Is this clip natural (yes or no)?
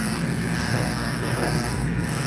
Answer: no